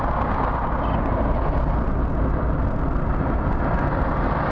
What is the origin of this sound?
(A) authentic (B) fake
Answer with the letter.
A